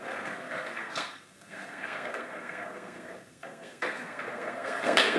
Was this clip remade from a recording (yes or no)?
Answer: yes